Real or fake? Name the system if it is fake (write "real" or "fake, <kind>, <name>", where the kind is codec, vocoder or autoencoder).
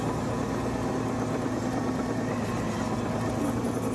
real